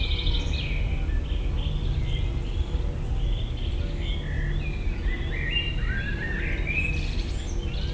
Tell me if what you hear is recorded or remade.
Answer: recorded